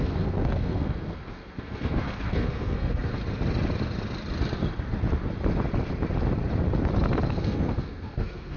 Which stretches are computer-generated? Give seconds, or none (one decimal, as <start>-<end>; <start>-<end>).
0.0-3.2; 7.3-8.6